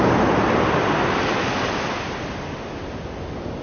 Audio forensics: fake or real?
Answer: real